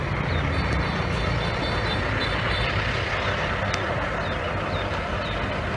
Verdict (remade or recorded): recorded